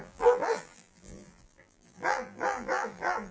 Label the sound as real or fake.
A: fake